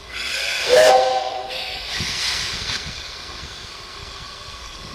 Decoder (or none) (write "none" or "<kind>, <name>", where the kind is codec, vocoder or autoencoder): codec, SNAC